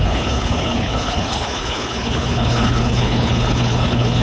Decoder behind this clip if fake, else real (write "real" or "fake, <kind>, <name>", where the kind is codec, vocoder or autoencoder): fake, codec, HILCodec